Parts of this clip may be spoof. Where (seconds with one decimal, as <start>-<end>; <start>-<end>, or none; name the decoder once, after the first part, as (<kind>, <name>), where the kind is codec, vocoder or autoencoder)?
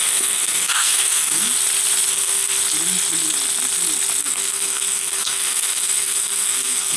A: 0.0-1.5 (codec, SNAC); 2.1-2.6; 4.2-7.0